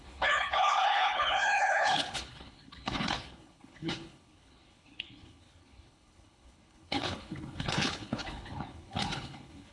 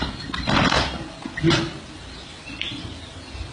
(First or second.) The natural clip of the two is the second